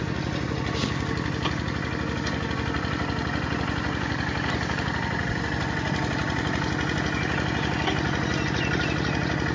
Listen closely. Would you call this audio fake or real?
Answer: real